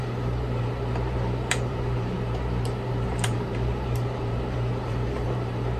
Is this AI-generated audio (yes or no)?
yes